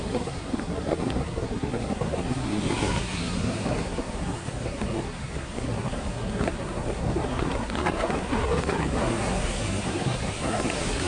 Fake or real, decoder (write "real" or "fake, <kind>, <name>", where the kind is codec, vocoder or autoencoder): fake, codec, SNAC